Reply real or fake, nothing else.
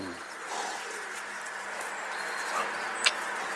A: real